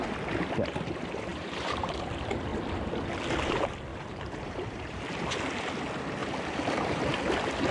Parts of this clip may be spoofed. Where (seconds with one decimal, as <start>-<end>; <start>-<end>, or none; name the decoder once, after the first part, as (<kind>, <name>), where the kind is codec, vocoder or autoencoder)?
1.3-2.0 (vocoder, BigVGAN v2); 3.9-5.0; 6.2-7.1